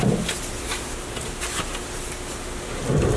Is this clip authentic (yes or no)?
yes